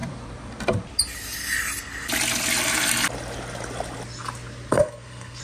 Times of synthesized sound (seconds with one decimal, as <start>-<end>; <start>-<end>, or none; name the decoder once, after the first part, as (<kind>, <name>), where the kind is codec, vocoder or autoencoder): 4.7-5.4 (codec, SNAC)

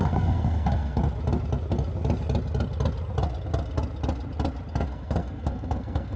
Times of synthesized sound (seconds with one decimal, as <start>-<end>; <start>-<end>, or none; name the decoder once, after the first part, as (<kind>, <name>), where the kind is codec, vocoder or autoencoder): 0.0-1.0 (codec, SNAC); 4.7-6.2

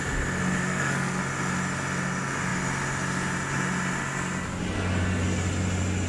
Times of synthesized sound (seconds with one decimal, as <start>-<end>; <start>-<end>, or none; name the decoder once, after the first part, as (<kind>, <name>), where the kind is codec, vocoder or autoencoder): 0.6-1.2 (codec, SNAC)